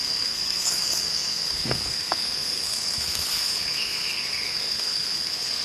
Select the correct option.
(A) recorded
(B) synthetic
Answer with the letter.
B